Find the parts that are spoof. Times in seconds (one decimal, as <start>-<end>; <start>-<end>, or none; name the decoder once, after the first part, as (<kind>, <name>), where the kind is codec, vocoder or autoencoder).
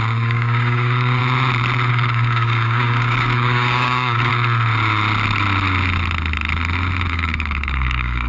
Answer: 0.0-1.2 (codec, DAC); 1.9-4.3; 7.1-8.3